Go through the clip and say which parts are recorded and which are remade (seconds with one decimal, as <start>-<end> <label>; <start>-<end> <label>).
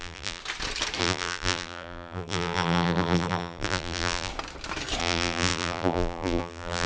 0.0-0.4 remade; 0.4-1.0 recorded; 1.0-4.3 remade; 4.3-5.0 recorded; 5.0-6.9 remade